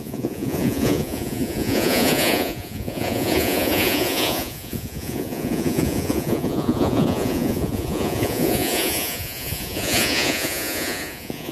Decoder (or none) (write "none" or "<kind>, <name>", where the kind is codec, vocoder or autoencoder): vocoder, Vocos